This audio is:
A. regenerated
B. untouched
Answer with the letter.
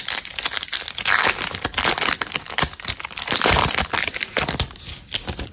B